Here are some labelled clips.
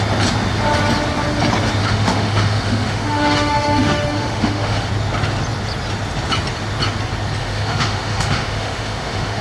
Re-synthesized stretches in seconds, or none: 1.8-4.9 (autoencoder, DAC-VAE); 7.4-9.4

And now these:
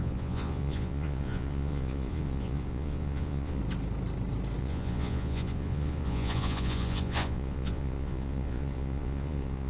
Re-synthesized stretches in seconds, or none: 0.0-3.6 (vocoder, Vocos); 4.6-9.7

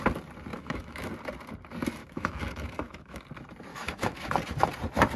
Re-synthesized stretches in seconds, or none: 0.5-1.1 (autoencoder, DAC-VAE); 2.0-3.2; 3.7-4.3

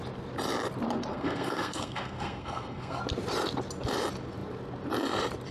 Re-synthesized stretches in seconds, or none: 1.1-3.0 (codec, SNAC)

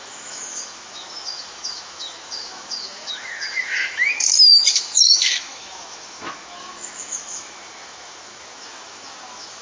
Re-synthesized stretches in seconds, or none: 0.0-9.6 (autoencoder, DAC-VAE)

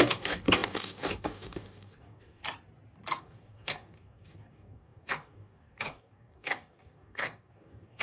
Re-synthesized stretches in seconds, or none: 0.0-2.4 (codec, DAC); 3.2-8.0

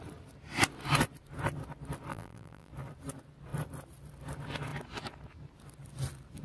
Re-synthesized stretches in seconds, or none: 2.1-2.7 (vocoder, BigVGAN v2)